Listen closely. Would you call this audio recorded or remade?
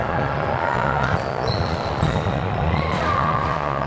remade